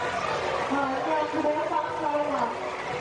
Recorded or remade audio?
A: recorded